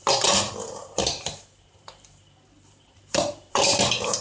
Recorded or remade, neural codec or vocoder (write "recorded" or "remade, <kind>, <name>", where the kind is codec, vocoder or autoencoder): remade, vocoder, BigVGAN v2